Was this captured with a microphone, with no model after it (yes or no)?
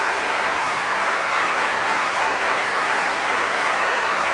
no